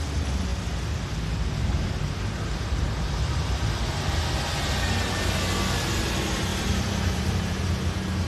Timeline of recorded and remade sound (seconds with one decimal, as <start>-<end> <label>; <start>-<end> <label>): 0.0-6.5 recorded; 6.5-7.6 remade; 7.6-8.3 recorded